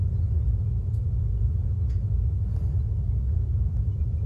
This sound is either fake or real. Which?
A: real